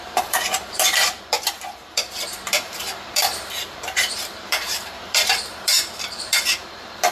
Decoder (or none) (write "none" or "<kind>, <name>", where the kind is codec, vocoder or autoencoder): vocoder, BigVGAN v2